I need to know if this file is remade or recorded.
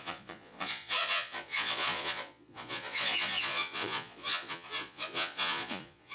remade